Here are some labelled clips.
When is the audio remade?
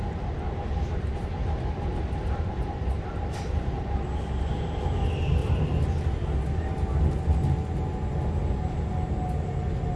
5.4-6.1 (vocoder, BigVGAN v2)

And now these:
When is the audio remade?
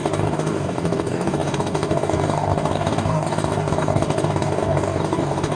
0.0-5.5 (codec, DAC)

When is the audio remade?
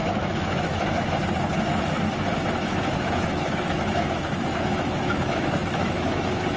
0.0-1.2 (autoencoder, DAC-VAE); 2.7-6.6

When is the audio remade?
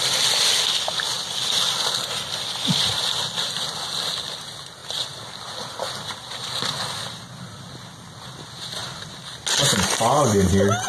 none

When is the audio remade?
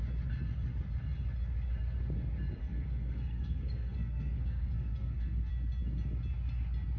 2.6-5.5 (codec, SNAC)